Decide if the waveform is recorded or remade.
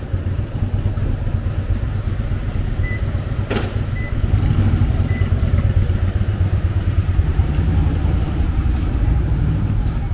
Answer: remade